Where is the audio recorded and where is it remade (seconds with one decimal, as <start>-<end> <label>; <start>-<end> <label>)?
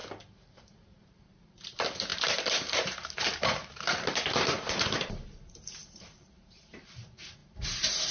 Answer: 0.0-0.5 recorded; 0.5-8.1 remade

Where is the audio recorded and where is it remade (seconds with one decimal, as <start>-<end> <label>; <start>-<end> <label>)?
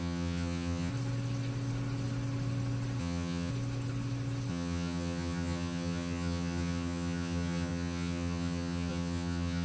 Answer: 0.0-0.9 remade; 0.9-3.0 recorded; 3.0-3.5 remade; 3.5-4.5 recorded; 4.5-9.6 remade